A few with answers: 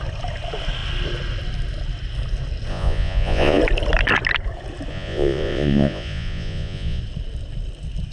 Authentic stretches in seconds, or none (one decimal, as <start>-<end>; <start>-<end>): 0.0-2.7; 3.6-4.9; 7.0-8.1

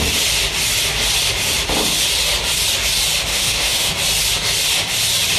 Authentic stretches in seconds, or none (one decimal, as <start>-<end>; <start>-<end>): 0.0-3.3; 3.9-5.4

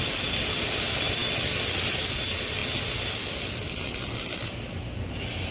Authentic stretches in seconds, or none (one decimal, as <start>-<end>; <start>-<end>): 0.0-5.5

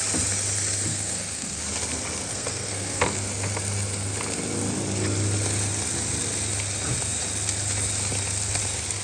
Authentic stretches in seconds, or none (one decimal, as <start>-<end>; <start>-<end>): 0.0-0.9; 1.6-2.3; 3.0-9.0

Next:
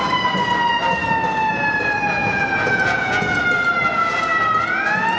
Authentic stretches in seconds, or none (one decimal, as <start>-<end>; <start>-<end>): 0.0-2.2; 3.4-5.2

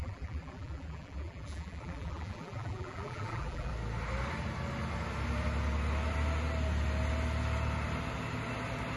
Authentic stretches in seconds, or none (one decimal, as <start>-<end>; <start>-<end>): 3.7-9.0

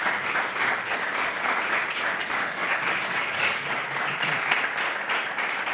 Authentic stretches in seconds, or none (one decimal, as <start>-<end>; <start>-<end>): 0.0-2.2; 3.8-5.7

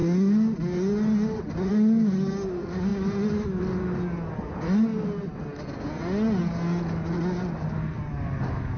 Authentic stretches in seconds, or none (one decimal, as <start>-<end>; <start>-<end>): 0.0-8.8